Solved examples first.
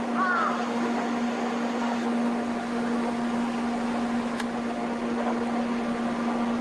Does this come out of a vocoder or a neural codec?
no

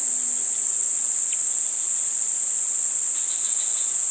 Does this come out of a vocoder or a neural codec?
no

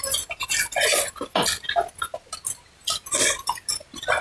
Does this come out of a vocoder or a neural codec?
no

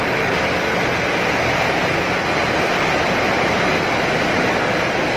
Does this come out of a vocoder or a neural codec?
no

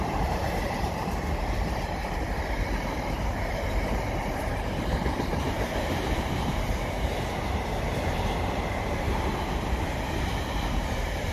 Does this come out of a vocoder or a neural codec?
yes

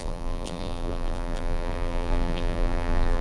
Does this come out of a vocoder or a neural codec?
yes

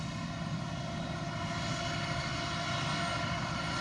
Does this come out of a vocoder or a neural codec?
no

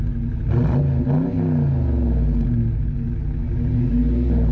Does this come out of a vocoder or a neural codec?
no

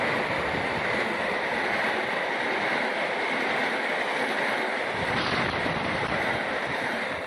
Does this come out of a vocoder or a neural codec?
yes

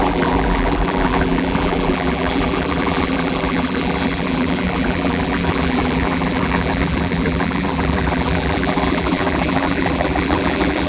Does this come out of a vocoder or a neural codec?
yes